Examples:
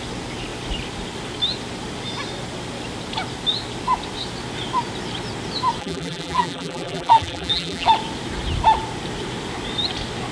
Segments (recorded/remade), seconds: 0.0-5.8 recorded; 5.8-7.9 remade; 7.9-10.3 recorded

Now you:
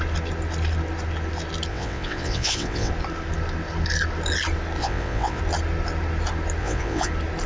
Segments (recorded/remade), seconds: 0.0-1.7 recorded; 1.7-2.9 remade; 2.9-4.8 recorded; 4.8-5.4 remade; 5.4-6.6 recorded; 6.6-7.1 remade; 7.1-7.5 recorded

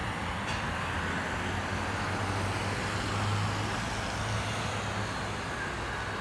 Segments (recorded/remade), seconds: 0.0-6.2 recorded

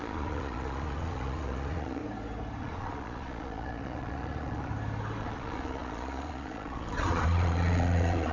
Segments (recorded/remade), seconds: 0.0-2.0 remade; 2.0-2.6 recorded; 2.6-4.7 remade; 4.7-5.2 recorded; 5.2-8.3 remade

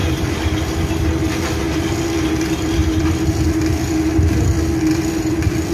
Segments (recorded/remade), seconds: 0.0-5.7 recorded

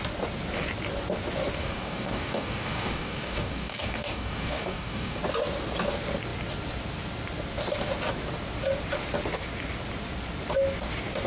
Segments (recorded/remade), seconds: 0.0-1.6 recorded; 1.6-5.2 remade; 5.2-11.3 recorded